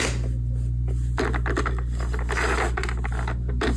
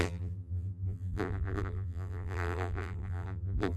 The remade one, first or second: second